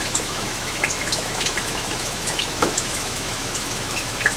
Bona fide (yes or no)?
no